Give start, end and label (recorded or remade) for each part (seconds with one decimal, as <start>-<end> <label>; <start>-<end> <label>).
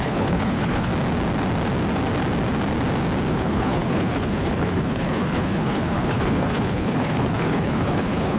0.0-0.9 remade; 0.9-3.3 recorded; 3.3-8.4 remade